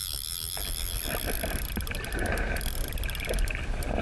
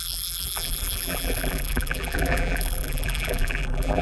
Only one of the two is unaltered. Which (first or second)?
first